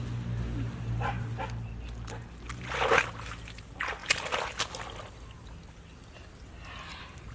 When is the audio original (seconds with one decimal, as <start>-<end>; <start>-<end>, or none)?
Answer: 0.0-4.0; 4.8-7.3